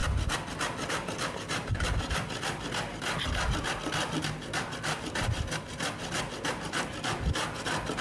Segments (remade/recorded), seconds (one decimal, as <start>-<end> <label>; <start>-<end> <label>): 0.0-8.0 recorded